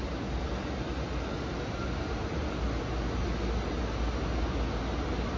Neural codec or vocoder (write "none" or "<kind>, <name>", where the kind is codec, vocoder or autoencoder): none